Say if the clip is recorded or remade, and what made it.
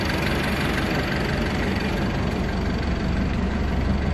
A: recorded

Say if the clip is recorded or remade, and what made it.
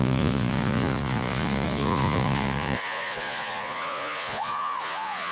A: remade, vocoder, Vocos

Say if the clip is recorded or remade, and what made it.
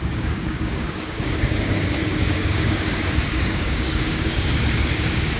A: remade, codec, DAC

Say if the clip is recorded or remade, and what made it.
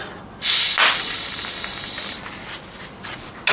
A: recorded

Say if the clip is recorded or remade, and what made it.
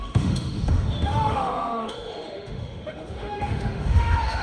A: remade, autoencoder, DAC-VAE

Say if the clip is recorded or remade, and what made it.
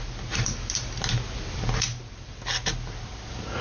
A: recorded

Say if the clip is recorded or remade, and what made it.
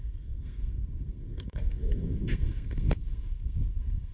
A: remade, codec, SNAC